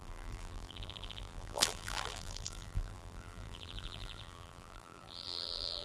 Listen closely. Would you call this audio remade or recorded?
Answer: remade